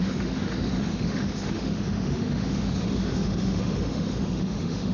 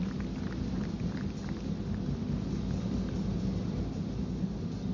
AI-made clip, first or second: first